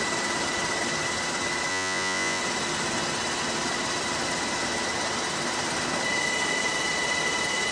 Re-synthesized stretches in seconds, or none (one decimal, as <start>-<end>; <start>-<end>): 1.7-2.4